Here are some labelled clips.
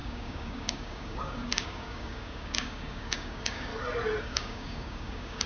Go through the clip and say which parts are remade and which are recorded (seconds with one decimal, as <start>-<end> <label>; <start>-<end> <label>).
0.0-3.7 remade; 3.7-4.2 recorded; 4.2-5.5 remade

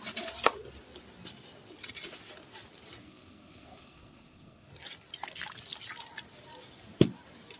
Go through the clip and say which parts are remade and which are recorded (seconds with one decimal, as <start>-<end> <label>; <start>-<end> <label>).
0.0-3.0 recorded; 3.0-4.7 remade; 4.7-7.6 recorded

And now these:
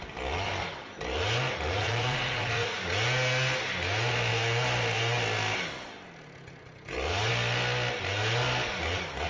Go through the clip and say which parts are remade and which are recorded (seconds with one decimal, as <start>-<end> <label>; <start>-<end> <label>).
0.0-1.8 recorded; 1.8-2.8 remade; 2.8-9.3 recorded